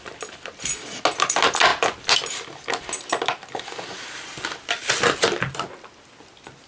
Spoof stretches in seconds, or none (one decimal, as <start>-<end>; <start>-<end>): none